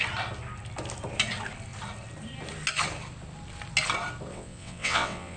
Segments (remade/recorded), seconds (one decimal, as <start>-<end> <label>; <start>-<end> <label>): 0.0-4.3 recorded; 4.3-5.4 remade